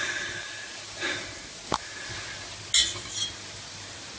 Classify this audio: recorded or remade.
recorded